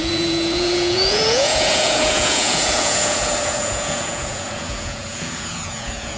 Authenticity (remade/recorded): remade